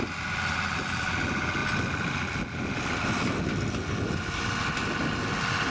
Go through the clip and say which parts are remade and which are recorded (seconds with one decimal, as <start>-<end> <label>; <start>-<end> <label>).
0.0-5.7 recorded